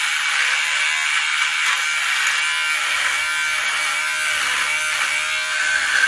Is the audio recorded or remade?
recorded